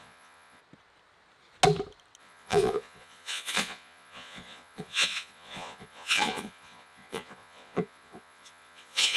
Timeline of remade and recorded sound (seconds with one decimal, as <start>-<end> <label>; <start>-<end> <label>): 0.0-0.6 remade; 0.6-2.2 recorded; 2.2-9.2 remade